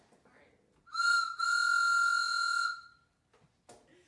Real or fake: real